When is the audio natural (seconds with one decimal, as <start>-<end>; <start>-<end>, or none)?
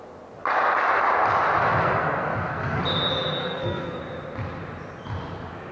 0.0-1.6; 2.8-3.4; 4.0-5.7